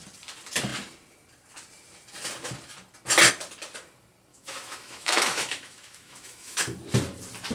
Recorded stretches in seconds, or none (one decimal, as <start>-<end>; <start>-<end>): 0.0-4.3; 6.6-7.5